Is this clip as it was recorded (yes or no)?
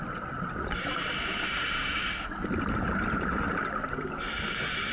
yes